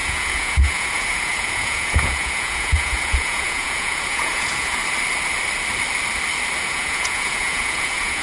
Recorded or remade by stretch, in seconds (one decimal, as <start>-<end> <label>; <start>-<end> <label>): 0.0-4.8 remade; 4.8-6.6 recorded; 6.6-8.2 remade

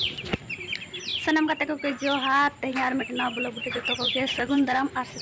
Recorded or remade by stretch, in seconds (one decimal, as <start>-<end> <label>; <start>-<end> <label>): 0.0-3.6 recorded; 3.6-5.2 remade

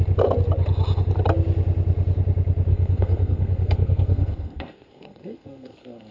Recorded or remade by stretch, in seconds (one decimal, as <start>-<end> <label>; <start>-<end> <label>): 0.0-2.7 recorded; 2.7-6.1 remade

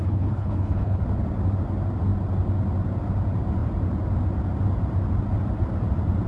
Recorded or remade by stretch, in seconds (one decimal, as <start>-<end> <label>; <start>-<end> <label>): 0.0-1.0 remade; 1.0-6.3 recorded

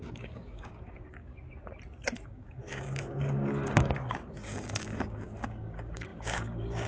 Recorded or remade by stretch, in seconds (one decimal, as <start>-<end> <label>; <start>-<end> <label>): 0.0-1.3 remade; 1.3-1.9 recorded; 1.9-6.9 remade